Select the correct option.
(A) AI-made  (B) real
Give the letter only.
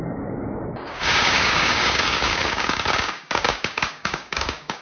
A